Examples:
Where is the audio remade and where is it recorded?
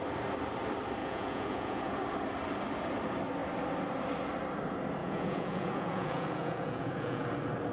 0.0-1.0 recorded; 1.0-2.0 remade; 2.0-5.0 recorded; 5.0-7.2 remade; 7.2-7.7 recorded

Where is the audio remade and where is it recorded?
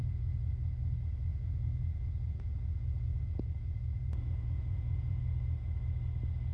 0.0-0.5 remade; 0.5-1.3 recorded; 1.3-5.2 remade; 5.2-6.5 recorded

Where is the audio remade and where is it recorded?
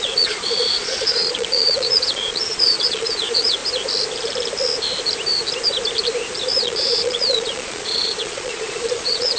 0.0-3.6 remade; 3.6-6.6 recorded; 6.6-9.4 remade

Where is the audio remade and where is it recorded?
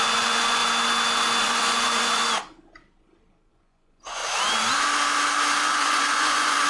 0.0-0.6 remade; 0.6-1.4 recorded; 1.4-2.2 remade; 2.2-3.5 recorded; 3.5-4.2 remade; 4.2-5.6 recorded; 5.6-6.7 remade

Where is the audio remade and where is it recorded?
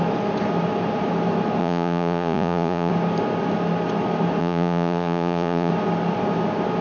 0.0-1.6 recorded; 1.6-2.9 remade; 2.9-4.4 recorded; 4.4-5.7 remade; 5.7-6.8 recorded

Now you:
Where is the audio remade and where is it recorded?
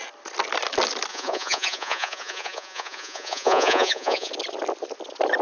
0.0-1.1 recorded; 1.1-4.3 remade; 4.3-5.4 recorded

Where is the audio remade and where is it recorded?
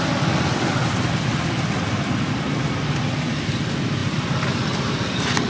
0.0-5.5 recorded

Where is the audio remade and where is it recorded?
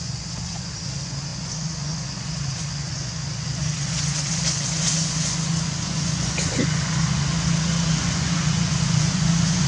0.0-9.7 remade